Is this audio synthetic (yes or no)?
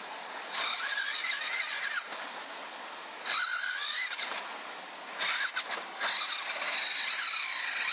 no